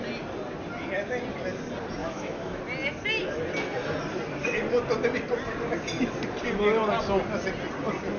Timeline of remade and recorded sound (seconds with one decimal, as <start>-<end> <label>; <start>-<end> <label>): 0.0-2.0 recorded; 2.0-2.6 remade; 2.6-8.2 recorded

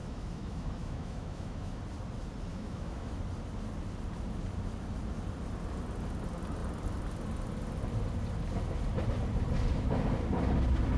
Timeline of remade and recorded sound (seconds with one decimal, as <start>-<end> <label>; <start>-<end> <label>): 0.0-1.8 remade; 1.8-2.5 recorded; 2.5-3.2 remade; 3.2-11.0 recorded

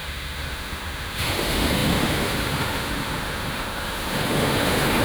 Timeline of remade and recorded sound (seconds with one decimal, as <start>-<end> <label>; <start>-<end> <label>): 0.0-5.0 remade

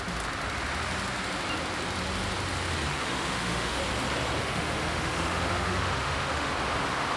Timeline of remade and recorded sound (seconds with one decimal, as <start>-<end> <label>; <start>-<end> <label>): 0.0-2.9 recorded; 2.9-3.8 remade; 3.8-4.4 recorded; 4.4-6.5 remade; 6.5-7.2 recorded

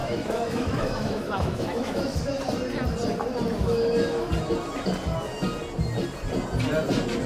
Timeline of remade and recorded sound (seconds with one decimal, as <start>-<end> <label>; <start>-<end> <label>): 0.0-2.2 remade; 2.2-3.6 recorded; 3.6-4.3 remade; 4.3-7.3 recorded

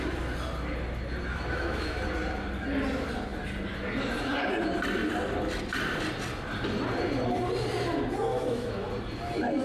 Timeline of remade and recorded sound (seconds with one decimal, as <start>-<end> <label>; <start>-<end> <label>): 0.0-1.3 recorded; 1.3-2.0 remade; 2.0-8.3 recorded; 8.3-8.9 remade; 8.9-9.6 recorded